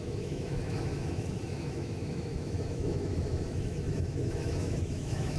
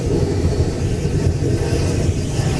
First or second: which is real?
second